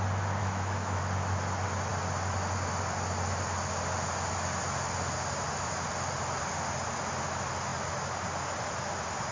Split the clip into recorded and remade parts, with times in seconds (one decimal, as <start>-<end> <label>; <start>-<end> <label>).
0.0-0.4 recorded; 0.4-1.0 remade; 1.0-9.3 recorded